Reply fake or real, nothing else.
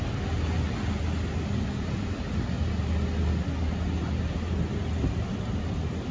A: real